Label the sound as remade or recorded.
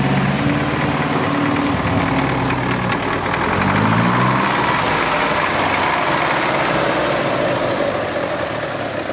recorded